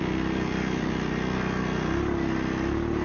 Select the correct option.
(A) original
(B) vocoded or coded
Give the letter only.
A